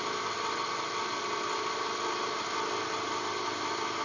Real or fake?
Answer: real